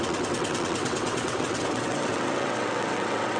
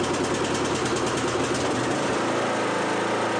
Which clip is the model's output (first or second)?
first